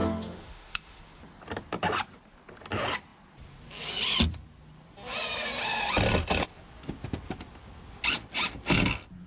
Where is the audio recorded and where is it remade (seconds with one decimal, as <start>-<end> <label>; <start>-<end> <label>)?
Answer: 0.0-1.0 remade; 1.0-9.3 recorded